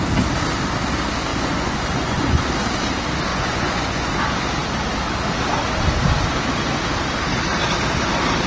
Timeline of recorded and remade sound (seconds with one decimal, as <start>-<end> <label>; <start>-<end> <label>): 0.0-1.3 recorded; 1.3-2.4 remade; 2.4-3.3 recorded; 3.3-4.1 remade; 4.1-8.5 recorded